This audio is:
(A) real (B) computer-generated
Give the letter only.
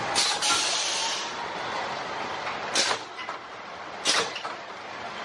A